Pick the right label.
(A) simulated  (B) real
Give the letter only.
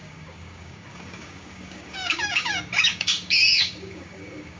A